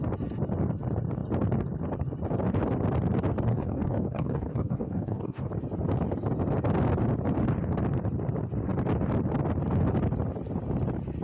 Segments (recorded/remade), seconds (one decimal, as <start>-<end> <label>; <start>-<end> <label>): 0.0-3.5 recorded; 3.5-5.5 remade; 5.5-11.2 recorded